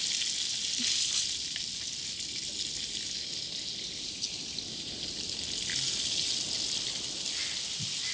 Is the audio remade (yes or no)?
no